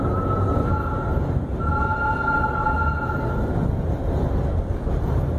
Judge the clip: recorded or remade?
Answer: recorded